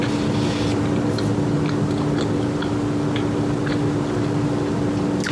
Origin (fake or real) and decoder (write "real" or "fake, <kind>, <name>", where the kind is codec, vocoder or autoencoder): real